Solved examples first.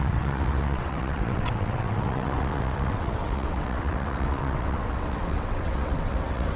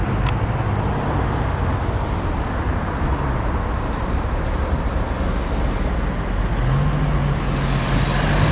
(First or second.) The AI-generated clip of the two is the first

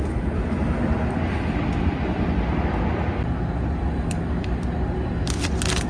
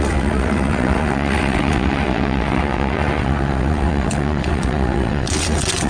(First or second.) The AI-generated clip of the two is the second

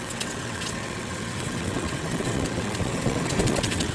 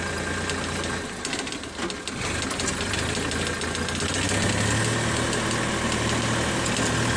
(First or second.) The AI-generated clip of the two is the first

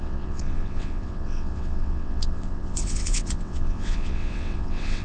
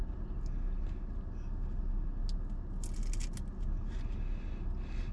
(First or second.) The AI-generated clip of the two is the first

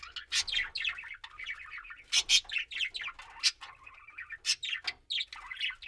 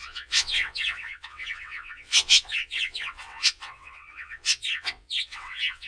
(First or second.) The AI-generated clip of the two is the second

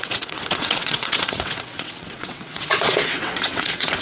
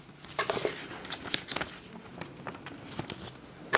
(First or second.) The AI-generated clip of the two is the first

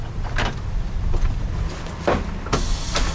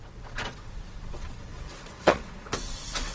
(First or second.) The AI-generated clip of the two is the second